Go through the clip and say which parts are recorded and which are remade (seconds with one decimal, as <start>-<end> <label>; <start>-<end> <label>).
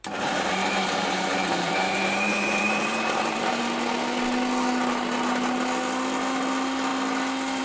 0.0-3.6 remade; 3.6-7.6 recorded